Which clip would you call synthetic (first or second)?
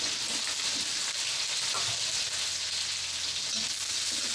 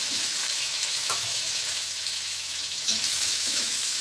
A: second